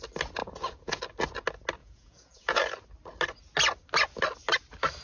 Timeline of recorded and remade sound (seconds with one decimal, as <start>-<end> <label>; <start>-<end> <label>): 0.0-0.4 recorded; 0.4-1.0 remade; 1.0-1.8 recorded; 1.8-2.6 remade; 2.6-5.0 recorded